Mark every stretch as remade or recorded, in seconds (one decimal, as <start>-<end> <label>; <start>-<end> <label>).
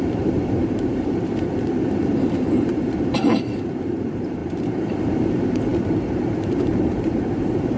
0.0-7.8 remade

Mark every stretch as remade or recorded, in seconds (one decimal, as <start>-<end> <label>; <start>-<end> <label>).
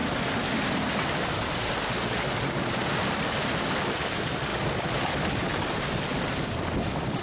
0.0-2.7 recorded; 2.7-4.5 remade; 4.5-5.2 recorded; 5.2-7.2 remade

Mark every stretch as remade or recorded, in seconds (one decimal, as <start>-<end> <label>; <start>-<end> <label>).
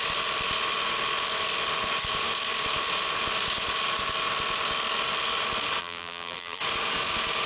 0.0-5.8 recorded; 5.8-6.6 remade; 6.6-7.5 recorded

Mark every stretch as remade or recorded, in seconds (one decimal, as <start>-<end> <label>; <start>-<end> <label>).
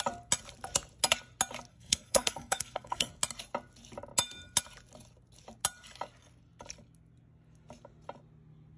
0.0-1.7 recorded; 1.7-3.1 remade; 3.1-8.8 recorded